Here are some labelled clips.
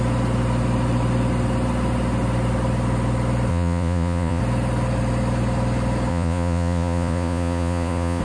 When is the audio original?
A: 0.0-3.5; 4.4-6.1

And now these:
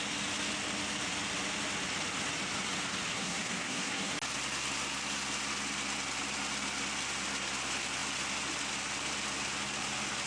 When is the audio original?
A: 0.0-3.1; 4.1-10.3

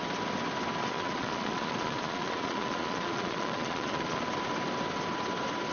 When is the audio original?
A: 0.0-0.8; 4.2-5.7

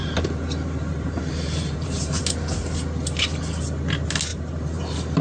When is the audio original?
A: 2.2-4.3

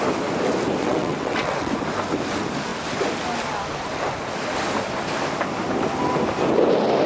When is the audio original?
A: 0.0-0.8; 1.7-7.1

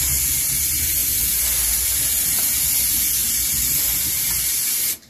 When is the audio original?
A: 0.0-1.0; 1.7-3.2; 3.9-5.1

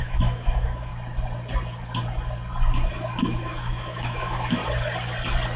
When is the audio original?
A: 0.9-3.2; 4.6-5.6